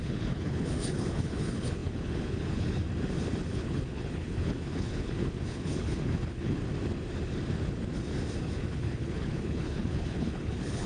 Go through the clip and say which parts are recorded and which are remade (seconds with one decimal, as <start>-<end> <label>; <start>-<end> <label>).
0.0-2.8 remade; 2.8-3.5 recorded; 3.5-6.6 remade; 6.6-8.4 recorded; 8.4-10.9 remade